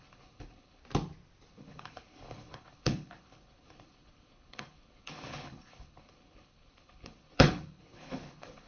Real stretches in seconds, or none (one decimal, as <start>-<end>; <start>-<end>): 0.8-1.5